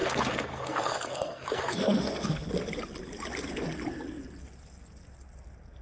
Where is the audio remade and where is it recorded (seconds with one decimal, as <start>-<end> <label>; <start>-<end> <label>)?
0.0-2.5 remade; 2.5-5.8 recorded